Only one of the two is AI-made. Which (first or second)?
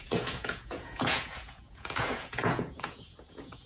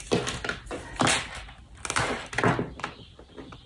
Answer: first